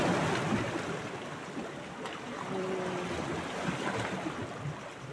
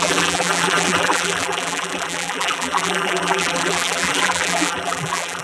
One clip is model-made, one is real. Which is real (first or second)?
first